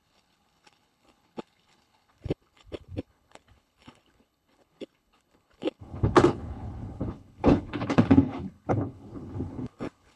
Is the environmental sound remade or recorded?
remade